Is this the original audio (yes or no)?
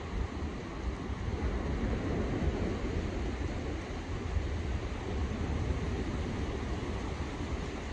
yes